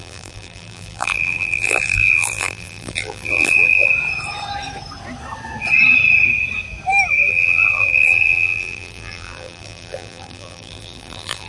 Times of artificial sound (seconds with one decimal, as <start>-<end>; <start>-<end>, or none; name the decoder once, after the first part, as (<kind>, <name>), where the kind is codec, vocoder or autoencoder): 0.0-3.9 (vocoder, BigVGAN v2); 7.3-11.5